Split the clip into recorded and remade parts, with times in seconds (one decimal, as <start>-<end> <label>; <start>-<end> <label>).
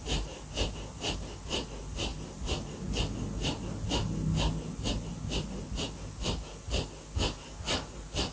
0.0-8.3 recorded